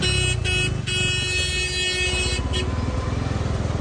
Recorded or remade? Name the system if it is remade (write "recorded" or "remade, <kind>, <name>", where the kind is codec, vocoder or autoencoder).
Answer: recorded